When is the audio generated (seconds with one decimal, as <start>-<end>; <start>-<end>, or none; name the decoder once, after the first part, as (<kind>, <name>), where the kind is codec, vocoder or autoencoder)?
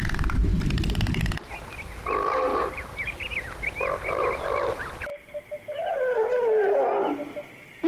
2.5-3.3 (vocoder, BigVGAN v2); 5.1-5.9